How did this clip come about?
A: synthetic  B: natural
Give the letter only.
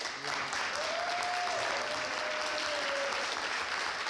B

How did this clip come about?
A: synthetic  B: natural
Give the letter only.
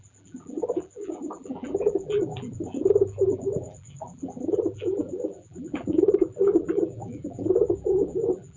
A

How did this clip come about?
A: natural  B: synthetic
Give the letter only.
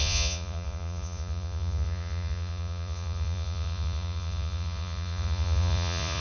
B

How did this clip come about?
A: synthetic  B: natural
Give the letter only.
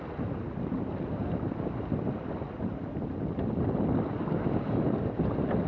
B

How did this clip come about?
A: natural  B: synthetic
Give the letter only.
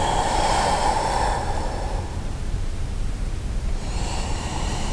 B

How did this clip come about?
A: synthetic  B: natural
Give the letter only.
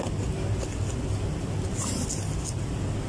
B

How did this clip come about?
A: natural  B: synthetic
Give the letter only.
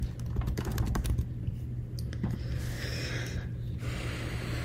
A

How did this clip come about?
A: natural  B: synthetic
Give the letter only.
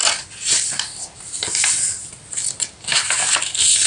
A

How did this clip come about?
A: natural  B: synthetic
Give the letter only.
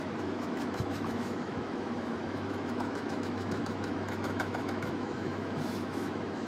B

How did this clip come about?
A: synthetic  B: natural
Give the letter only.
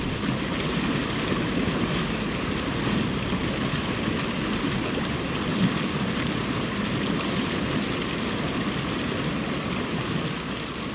B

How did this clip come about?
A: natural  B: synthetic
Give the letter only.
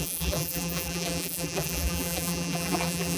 B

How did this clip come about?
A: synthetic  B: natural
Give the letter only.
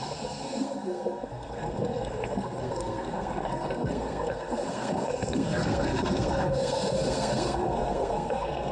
A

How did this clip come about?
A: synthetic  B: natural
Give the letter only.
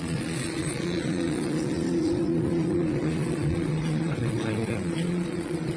A